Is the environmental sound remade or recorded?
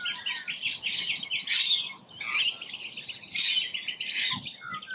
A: recorded